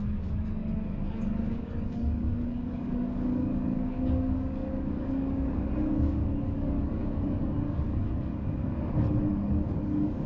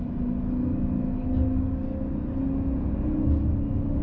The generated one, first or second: first